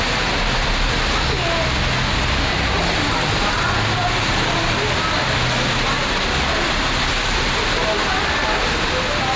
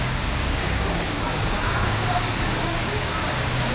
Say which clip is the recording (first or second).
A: first